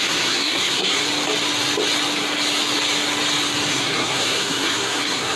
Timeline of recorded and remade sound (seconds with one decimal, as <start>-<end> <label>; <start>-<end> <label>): 0.0-1.0 remade; 1.0-3.7 recorded; 3.7-5.4 remade